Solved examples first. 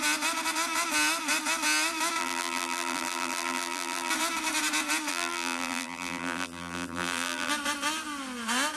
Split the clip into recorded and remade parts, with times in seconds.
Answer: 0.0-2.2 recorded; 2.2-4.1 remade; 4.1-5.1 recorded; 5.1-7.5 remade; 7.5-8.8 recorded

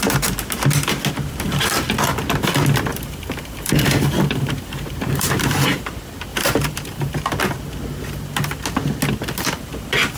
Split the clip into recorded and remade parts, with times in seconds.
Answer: 0.0-2.9 recorded; 2.9-5.8 remade; 5.8-6.3 recorded; 6.3-7.2 remade; 7.2-10.2 recorded

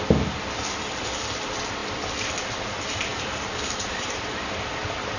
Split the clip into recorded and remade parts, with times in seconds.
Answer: 0.0-5.2 remade